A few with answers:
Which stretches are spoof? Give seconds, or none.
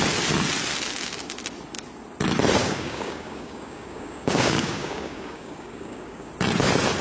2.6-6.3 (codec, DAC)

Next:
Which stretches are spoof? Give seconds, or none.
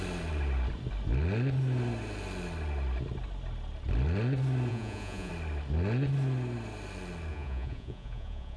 4.7-5.3 (vocoder, Vocos); 7.3-8.6